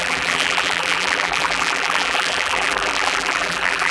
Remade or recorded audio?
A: remade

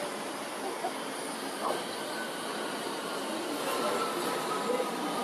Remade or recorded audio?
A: recorded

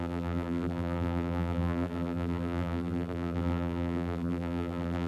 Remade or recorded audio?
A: remade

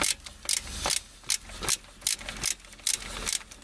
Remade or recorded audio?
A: recorded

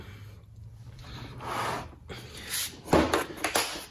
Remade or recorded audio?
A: recorded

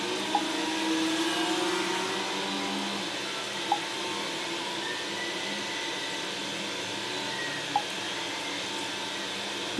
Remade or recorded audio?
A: recorded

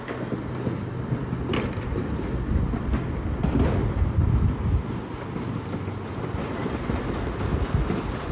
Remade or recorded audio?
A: recorded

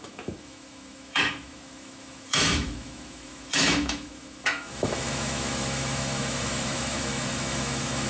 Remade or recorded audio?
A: remade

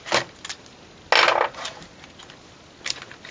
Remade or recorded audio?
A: recorded